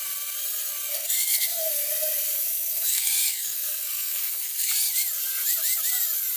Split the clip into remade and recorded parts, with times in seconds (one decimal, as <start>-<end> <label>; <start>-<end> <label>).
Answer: 0.0-0.9 recorded; 0.9-4.7 remade; 4.7-6.4 recorded